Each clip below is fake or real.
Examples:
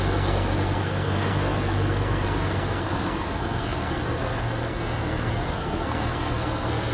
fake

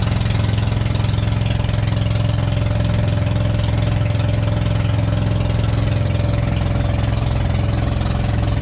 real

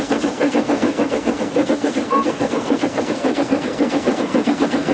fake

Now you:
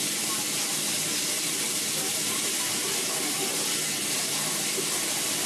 real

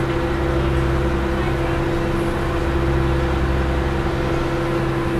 real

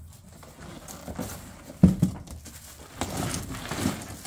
real